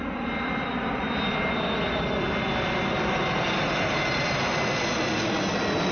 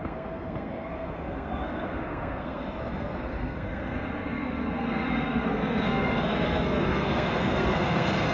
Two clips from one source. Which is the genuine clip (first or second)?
first